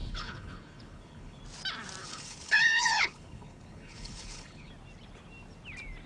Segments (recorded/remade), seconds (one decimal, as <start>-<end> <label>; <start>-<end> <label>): 0.0-1.4 remade; 1.4-2.0 recorded; 2.0-4.7 remade; 4.7-6.1 recorded